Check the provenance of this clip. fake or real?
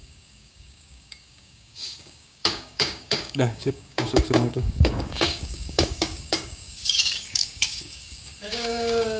fake